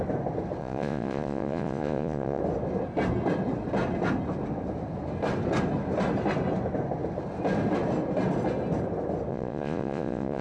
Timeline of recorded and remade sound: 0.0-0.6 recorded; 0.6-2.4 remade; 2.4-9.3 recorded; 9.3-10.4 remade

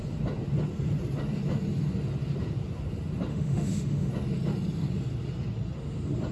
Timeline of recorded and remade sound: 0.0-3.3 recorded; 3.3-4.1 remade; 4.1-6.3 recorded

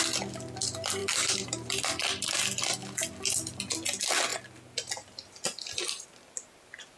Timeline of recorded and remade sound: 0.0-1.0 recorded; 1.0-1.7 remade; 1.7-7.0 recorded